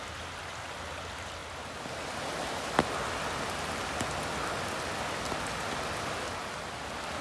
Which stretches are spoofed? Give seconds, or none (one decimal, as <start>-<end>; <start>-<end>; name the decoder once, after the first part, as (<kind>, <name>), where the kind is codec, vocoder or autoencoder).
none